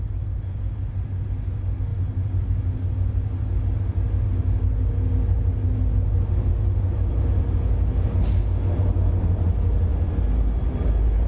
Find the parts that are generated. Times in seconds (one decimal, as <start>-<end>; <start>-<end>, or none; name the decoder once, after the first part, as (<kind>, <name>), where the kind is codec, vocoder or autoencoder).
none